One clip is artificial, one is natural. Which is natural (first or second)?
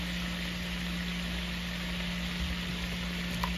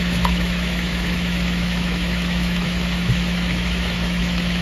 first